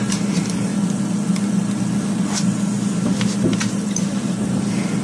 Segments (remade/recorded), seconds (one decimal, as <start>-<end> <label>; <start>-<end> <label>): 0.0-0.7 remade; 0.7-3.7 recorded; 3.7-5.0 remade